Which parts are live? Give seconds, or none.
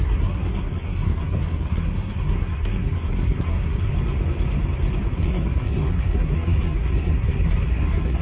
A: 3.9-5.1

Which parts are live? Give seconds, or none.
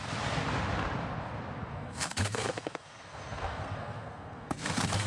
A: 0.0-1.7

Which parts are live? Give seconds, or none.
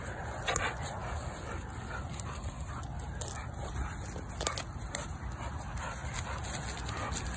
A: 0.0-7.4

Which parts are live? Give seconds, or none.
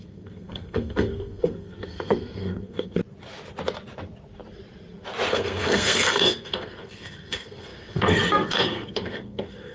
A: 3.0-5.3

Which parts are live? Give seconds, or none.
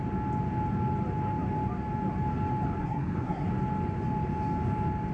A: 0.0-2.8; 3.5-5.1